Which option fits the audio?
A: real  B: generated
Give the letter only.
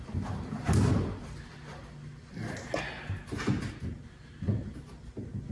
A